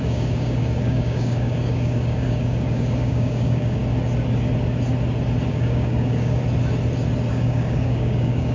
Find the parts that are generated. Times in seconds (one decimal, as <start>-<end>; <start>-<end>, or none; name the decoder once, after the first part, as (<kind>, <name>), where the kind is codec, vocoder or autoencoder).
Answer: 0.0-3.8 (codec, DAC); 5.5-6.4; 7.3-8.5